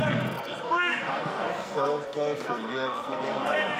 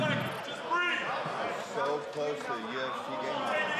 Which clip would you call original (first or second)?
second